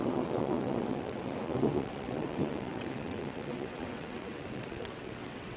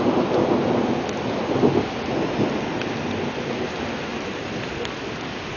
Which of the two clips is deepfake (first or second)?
first